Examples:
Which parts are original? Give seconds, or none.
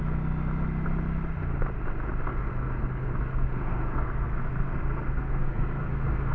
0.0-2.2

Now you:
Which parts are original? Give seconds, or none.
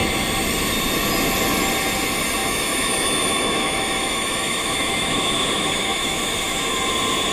0.0-2.4; 6.8-7.3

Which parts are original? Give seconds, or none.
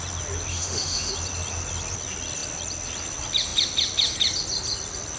0.0-0.5; 1.1-5.2